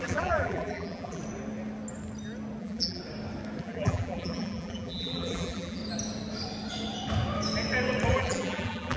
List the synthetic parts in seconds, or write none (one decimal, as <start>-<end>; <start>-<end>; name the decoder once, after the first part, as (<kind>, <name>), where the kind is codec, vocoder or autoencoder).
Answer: 0.0-1.2 (vocoder, BigVGAN v2); 2.6-3.0; 3.6-5.8; 8.1-9.0